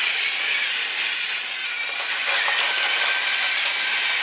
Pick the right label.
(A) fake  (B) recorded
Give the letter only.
B